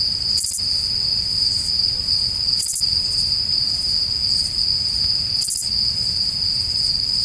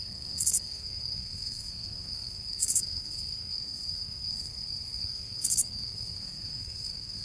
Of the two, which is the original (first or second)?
first